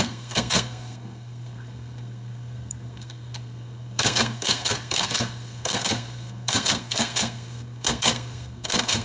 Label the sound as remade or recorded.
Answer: remade